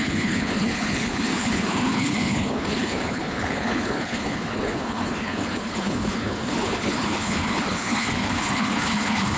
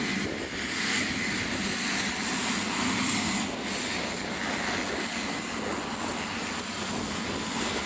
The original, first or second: second